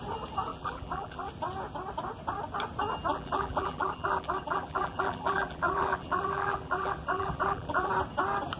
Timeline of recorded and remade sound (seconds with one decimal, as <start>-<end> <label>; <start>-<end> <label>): 0.0-0.5 recorded; 0.5-1.3 remade; 1.3-3.1 recorded; 3.1-7.9 remade; 7.9-8.6 recorded